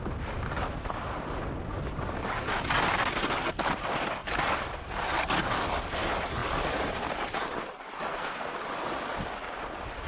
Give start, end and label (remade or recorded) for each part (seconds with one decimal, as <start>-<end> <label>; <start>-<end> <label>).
0.0-8.1 recorded; 8.1-8.6 remade; 8.6-10.1 recorded